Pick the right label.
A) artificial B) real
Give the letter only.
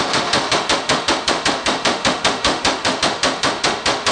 A